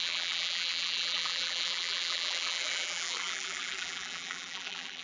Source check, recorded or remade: remade